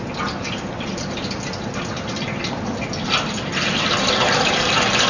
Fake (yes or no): no